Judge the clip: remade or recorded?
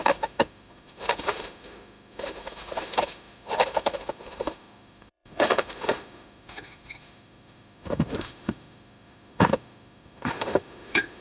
remade